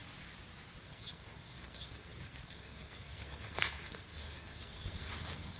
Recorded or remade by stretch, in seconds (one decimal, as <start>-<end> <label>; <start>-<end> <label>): 0.0-0.8 recorded; 0.8-5.6 remade